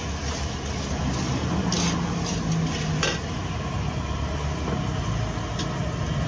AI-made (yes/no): no